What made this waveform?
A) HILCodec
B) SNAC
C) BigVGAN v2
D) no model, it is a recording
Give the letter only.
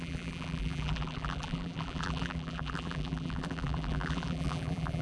C